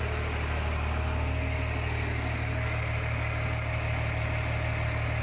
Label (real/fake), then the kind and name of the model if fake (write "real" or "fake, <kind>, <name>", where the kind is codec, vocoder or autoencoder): real